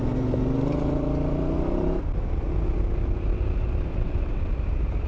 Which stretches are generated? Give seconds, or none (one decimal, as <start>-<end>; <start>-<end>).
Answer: 3.9-4.5